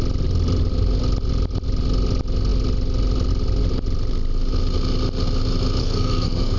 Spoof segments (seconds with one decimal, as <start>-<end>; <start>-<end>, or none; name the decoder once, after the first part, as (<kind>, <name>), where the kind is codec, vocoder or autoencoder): 5.8-6.6 (codec, SNAC)